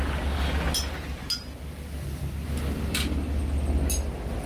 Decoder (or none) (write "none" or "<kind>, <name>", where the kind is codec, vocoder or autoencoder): none